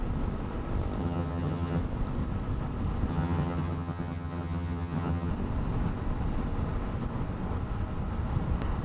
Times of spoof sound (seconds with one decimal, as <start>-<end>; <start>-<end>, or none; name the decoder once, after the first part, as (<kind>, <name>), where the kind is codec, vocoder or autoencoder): 1.0-1.8 (vocoder, HiFi-GAN); 3.1-5.3